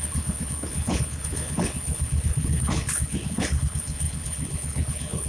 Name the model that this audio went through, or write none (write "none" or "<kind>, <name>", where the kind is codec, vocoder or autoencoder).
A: codec, HILCodec